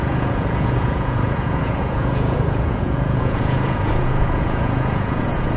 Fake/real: fake